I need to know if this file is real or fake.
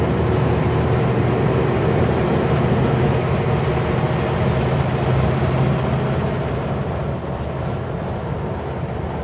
real